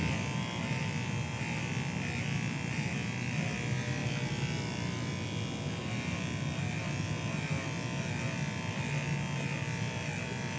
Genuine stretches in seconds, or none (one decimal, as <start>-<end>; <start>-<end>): 0.0-10.6